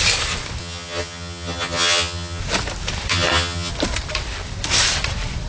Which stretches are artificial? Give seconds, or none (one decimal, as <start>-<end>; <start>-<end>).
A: 0.6-2.4; 3.1-3.7

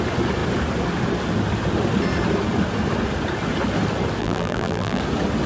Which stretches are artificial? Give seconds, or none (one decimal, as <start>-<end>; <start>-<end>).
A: 4.2-5.0

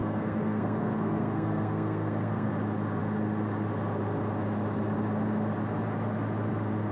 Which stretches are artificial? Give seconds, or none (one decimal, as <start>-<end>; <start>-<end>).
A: 0.0-2.5

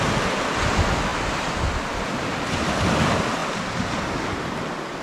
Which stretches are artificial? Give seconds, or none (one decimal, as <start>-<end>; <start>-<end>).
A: none

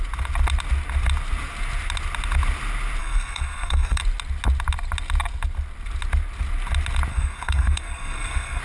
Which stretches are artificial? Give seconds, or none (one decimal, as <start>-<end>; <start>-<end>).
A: 3.0-4.0; 7.1-8.6

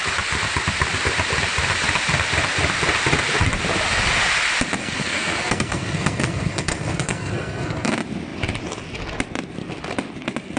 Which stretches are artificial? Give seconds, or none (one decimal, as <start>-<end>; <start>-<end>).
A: 4.8-7.9

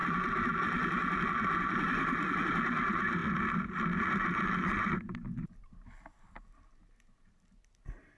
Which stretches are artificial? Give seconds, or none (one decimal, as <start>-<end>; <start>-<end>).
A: 0.0-1.2; 3.2-5.0

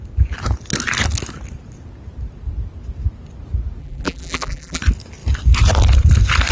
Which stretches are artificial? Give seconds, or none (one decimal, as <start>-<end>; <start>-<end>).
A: 3.8-4.8